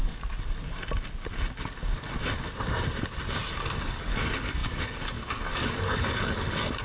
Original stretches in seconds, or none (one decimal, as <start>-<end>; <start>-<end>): 0.0-3.7